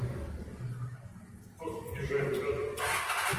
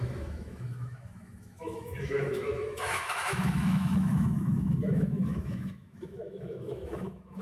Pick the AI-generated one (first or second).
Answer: second